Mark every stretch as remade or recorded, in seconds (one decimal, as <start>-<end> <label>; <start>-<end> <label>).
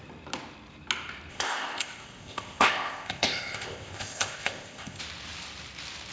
0.0-1.3 recorded; 1.3-5.0 remade; 5.0-6.1 recorded